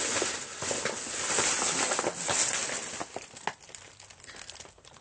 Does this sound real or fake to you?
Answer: real